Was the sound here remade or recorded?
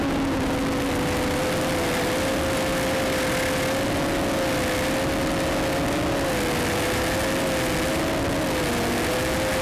recorded